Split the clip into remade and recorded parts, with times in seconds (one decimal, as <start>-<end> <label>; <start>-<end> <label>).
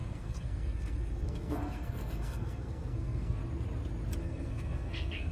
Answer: 0.0-3.4 remade; 3.4-4.2 recorded; 4.2-5.3 remade